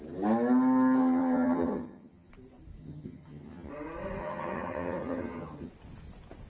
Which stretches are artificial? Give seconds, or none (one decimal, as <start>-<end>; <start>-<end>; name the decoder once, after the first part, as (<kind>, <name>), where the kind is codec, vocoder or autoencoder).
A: 1.0-2.3 (vocoder, HiFi-GAN); 2.8-3.7; 4.2-5.7